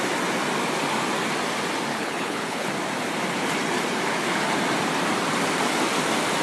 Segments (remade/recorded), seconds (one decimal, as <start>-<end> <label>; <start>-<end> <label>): 0.0-1.9 recorded; 1.9-2.7 remade; 2.7-6.4 recorded

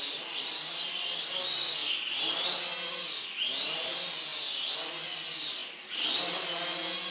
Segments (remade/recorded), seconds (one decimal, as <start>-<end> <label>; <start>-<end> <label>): 0.0-7.1 recorded

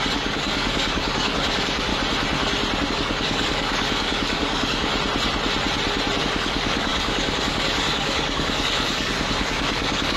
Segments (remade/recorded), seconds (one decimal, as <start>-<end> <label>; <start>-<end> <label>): 0.0-1.9 remade; 1.9-2.9 recorded; 2.9-4.9 remade; 4.9-6.2 recorded; 6.2-10.2 remade

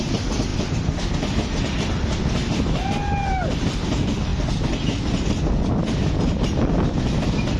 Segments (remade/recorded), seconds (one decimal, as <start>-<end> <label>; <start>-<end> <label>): 0.0-0.5 recorded; 0.5-2.1 remade; 2.1-7.6 recorded

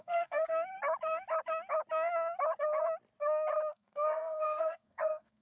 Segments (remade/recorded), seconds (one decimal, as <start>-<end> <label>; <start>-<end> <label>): 0.0-0.5 remade; 0.5-3.7 recorded; 3.7-5.4 remade